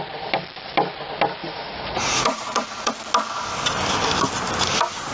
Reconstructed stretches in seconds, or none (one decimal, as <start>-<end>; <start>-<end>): 1.4-2.9